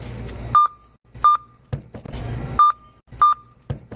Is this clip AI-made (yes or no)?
no